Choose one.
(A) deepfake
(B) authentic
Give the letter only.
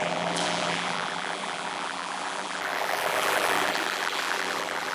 A